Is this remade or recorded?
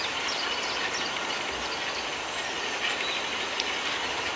recorded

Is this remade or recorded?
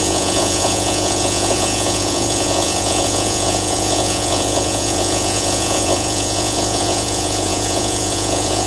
remade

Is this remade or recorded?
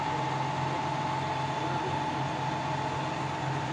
recorded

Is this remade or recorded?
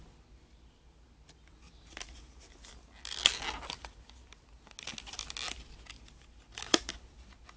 recorded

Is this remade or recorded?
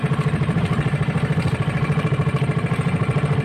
recorded